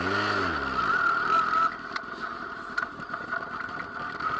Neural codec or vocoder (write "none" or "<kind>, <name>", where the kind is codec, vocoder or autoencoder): none